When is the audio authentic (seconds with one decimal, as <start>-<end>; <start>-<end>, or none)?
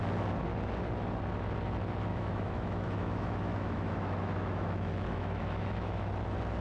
0.0-2.1; 6.1-6.6